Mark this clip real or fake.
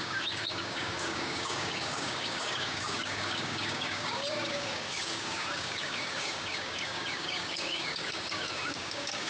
fake